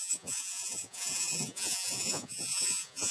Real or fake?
fake